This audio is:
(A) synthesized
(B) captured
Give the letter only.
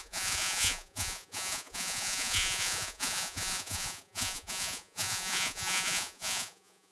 A